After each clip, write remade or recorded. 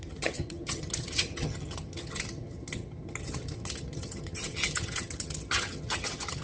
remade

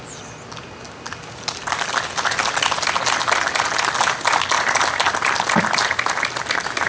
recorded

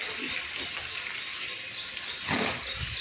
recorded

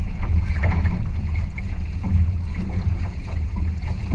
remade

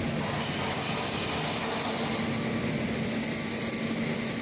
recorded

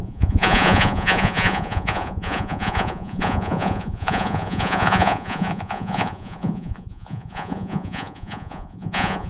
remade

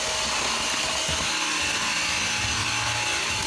recorded